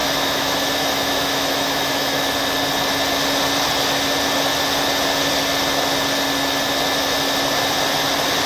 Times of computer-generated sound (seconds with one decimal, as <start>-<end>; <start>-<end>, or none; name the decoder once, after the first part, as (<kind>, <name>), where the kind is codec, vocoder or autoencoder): 0.0-2.3 (autoencoder, DAC-VAE)